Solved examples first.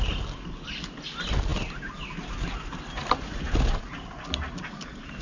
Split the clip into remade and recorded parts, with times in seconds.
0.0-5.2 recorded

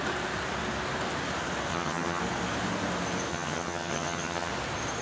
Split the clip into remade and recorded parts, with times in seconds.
0.0-1.7 recorded; 1.7-2.2 remade; 2.2-3.3 recorded; 3.3-4.5 remade; 4.5-5.0 recorded

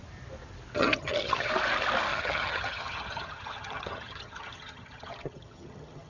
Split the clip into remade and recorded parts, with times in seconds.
0.0-0.8 recorded; 0.8-1.5 remade; 1.5-2.1 recorded; 2.1-6.1 remade

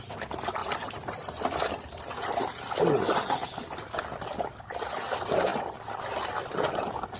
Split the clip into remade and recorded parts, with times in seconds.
0.0-7.2 recorded

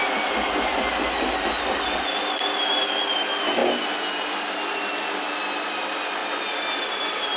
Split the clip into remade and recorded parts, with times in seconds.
0.0-7.4 recorded

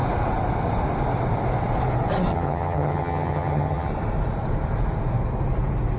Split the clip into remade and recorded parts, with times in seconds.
0.0-2.3 recorded; 2.3-3.9 remade; 3.9-6.0 recorded

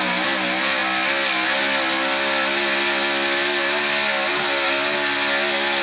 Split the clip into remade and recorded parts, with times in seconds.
0.0-5.8 recorded

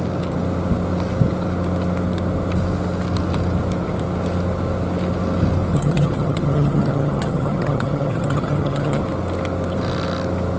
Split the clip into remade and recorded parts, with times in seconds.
0.0-5.7 recorded; 5.7-9.0 remade; 9.0-10.6 recorded